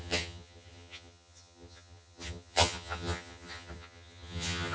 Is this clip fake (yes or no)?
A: yes